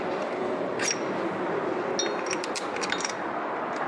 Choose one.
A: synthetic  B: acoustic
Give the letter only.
B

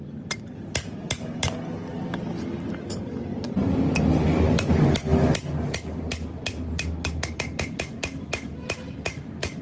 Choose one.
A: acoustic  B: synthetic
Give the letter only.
A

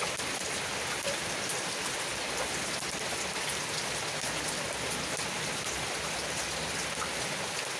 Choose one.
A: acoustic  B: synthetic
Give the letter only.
A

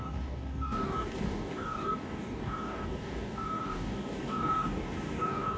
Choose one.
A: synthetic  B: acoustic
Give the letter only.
A